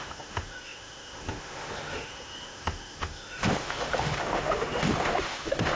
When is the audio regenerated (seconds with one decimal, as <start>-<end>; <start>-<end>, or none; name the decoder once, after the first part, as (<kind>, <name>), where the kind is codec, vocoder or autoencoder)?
0.0-5.8 (autoencoder, DAC-VAE)